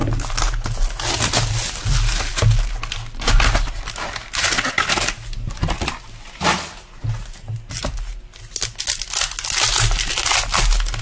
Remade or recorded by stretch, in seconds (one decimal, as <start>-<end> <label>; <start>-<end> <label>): 0.0-11.0 recorded